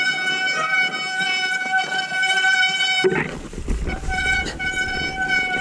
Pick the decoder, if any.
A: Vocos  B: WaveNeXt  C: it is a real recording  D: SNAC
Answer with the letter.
C